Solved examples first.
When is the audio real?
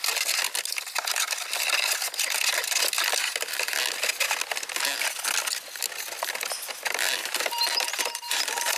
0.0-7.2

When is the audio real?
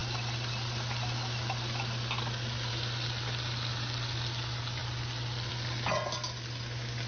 0.0-7.1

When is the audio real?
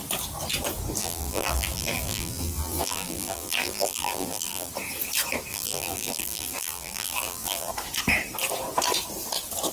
0.0-1.0; 4.7-5.5; 7.7-9.7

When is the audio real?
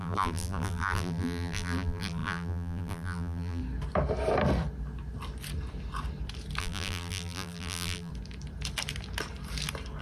3.6-6.6; 8.1-10.0